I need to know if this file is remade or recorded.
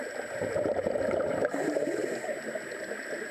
recorded